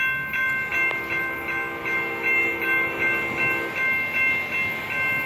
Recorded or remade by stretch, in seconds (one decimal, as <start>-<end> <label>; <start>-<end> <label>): 0.0-5.3 recorded